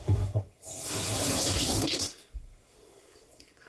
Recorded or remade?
remade